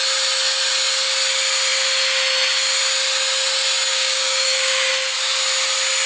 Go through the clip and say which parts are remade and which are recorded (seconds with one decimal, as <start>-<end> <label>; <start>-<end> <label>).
0.0-3.9 recorded; 3.9-4.9 remade; 4.9-6.1 recorded